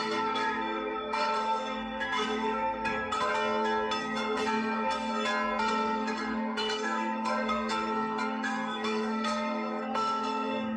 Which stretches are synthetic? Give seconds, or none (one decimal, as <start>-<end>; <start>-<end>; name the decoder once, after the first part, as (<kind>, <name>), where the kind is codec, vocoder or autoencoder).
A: 0.0-3.3 (codec, SNAC); 4.0-5.1; 5.6-10.8